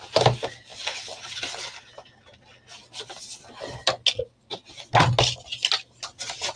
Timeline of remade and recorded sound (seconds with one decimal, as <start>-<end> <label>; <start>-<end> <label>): 0.0-6.6 recorded